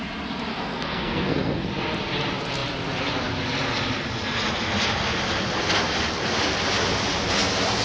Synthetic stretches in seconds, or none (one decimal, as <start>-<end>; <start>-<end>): 0.5-1.7